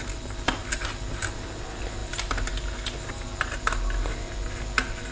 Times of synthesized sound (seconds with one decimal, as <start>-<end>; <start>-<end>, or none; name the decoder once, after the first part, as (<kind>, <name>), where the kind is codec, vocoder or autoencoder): none